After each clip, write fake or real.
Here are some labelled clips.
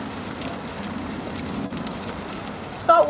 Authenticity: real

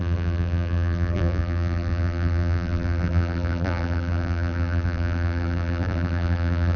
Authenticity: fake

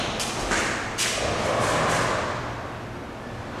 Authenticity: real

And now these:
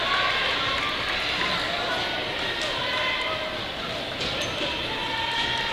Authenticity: real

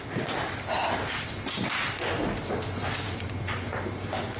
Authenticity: real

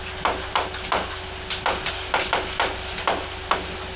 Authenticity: real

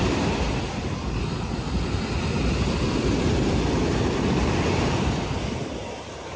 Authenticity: real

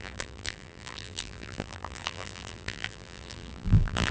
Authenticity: fake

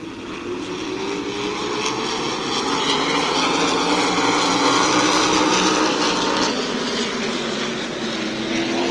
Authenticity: real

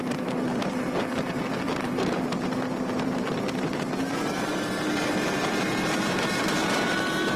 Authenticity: fake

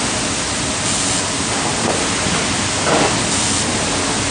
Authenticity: real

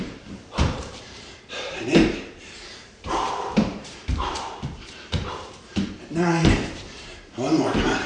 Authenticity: fake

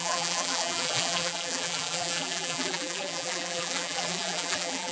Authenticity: fake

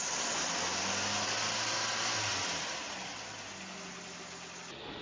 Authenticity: real